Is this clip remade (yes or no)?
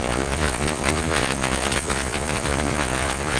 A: yes